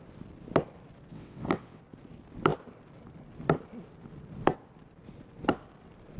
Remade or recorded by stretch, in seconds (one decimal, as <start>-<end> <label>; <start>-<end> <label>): 0.0-1.1 recorded; 1.1-1.8 remade; 1.8-6.2 recorded